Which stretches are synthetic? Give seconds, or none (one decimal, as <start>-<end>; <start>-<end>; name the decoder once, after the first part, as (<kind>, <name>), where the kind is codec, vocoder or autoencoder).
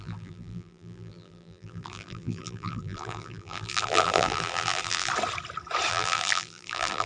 0.0-5.1 (vocoder, BigVGAN v2); 5.9-7.1